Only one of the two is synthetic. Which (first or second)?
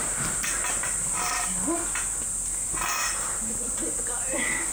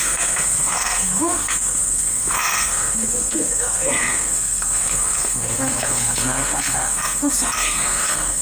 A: second